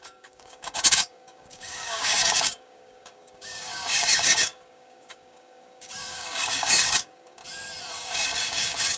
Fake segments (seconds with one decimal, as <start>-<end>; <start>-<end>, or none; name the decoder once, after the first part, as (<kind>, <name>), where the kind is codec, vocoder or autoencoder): 0.0-7.4 (codec, DAC); 7.9-9.0